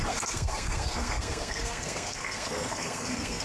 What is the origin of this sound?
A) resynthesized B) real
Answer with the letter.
A